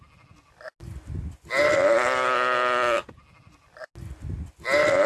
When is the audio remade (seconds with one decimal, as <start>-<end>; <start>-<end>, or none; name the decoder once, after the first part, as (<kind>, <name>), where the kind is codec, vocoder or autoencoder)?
none